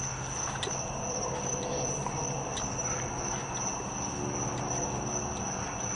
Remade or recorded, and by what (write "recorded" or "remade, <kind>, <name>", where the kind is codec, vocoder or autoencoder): recorded